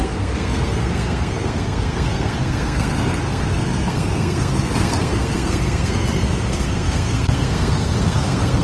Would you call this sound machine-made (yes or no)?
yes